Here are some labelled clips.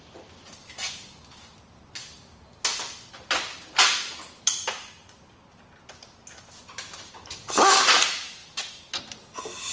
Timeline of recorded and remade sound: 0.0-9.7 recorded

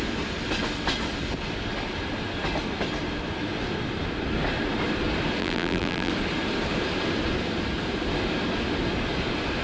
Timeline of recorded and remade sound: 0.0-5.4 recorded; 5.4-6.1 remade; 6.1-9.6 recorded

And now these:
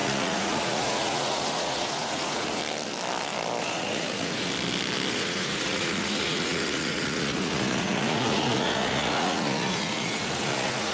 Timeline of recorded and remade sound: 0.0-2.6 remade; 2.6-3.6 recorded; 3.6-4.5 remade; 4.5-5.1 recorded; 5.1-10.9 remade